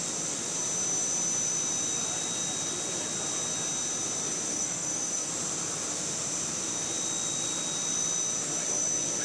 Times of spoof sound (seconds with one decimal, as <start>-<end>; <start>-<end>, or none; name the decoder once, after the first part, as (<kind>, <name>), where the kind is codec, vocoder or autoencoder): 4.5-5.3 (codec, SNAC)